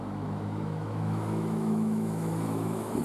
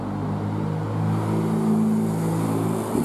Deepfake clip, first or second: first